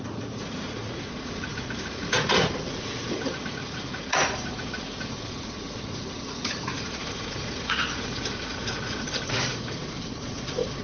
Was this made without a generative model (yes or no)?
no